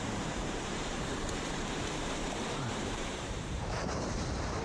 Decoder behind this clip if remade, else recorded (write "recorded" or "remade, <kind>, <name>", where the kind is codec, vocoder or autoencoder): remade, vocoder, BigVGAN v2